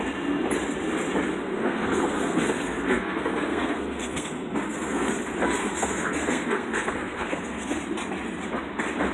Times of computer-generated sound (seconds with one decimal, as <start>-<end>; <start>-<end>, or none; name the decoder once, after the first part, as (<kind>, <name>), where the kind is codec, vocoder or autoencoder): 1.4-5.1 (codec, SNAC); 5.6-7.8